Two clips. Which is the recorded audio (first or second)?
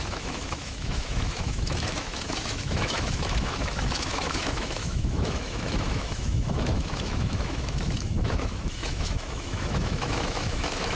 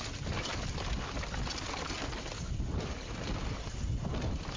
second